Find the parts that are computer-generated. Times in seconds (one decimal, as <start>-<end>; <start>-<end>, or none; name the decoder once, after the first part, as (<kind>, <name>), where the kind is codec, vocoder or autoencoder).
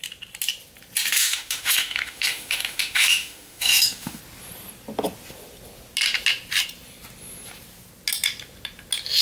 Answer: 1.1-4.2 (autoencoder, DAC-VAE)